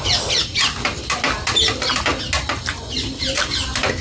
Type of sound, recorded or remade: recorded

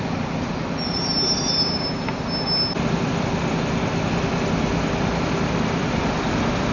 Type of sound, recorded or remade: recorded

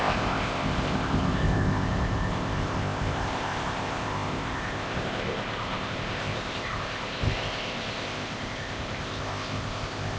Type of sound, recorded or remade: remade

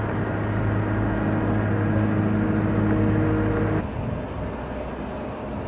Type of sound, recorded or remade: recorded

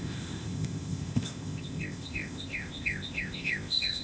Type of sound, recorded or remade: remade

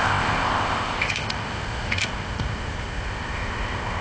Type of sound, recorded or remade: remade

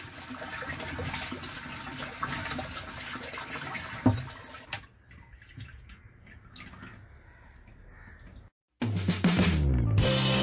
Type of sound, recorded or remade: recorded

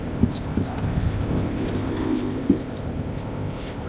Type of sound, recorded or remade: remade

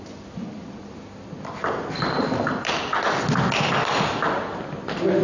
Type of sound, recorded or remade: recorded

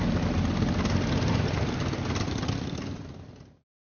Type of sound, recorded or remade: recorded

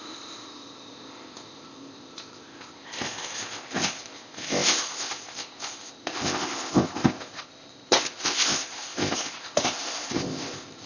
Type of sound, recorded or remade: remade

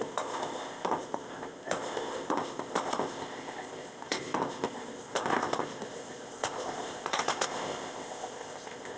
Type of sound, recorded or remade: remade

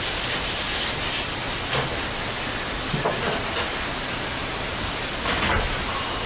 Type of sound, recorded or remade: recorded